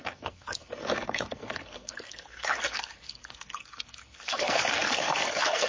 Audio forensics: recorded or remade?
remade